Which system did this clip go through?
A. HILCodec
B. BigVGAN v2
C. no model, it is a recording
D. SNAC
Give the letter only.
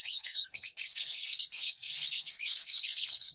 D